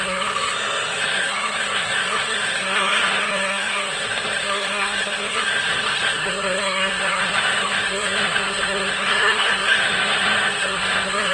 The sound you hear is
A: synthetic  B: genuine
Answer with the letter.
A